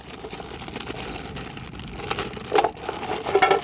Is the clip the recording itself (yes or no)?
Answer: yes